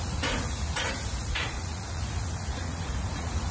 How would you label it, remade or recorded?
remade